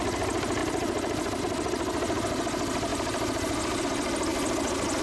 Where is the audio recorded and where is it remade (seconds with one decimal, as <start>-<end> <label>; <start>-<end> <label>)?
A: 0.0-0.6 recorded; 0.6-1.4 remade; 1.4-2.9 recorded; 2.9-3.8 remade; 3.8-5.0 recorded